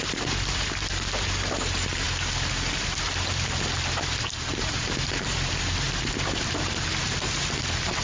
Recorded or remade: remade